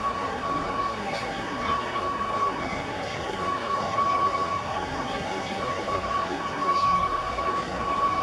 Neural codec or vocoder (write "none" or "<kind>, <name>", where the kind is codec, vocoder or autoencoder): codec, SNAC